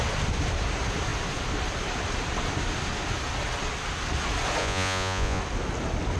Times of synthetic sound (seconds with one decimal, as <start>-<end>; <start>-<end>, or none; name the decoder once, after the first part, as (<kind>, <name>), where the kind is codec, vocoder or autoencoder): 4.6-5.4 (vocoder, Vocos)